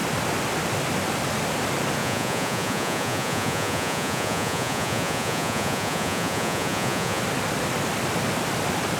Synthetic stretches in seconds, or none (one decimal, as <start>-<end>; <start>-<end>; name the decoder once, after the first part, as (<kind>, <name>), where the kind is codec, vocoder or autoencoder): 2.0-7.2 (vocoder, Vocos)